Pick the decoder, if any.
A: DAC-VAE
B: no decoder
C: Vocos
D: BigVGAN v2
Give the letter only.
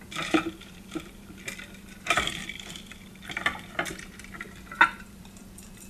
D